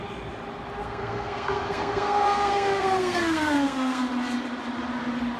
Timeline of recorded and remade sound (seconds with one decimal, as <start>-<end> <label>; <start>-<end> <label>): 0.0-0.8 recorded; 0.8-4.0 remade; 4.0-5.4 recorded